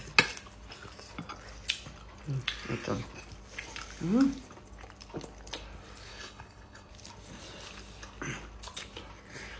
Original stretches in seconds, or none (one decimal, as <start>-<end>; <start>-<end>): 0.0-6.1; 6.9-9.6